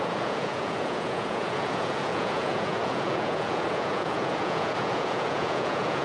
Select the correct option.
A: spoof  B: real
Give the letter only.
A